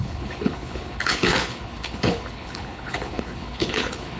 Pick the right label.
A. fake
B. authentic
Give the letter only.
A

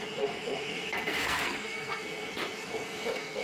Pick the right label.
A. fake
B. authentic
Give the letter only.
A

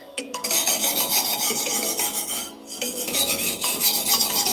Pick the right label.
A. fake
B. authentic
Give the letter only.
A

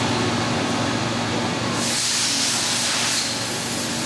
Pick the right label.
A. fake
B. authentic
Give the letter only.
B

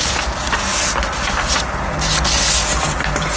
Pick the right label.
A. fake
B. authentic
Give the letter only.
B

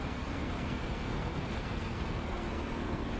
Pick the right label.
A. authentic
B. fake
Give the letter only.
B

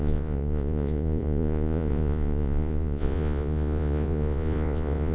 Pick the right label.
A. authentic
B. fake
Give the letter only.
B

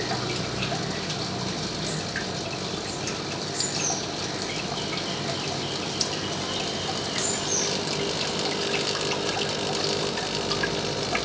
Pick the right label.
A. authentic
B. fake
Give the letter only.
A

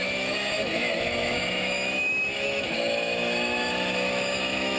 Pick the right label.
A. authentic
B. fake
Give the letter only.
B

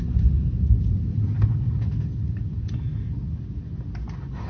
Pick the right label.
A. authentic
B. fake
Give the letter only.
A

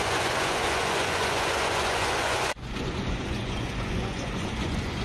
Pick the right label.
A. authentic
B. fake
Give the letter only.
B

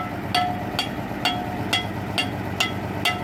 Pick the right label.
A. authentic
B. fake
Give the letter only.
A